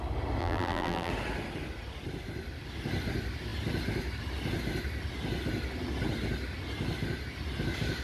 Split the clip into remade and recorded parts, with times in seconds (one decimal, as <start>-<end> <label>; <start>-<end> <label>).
0.0-0.4 recorded; 0.4-1.1 remade; 1.1-8.0 recorded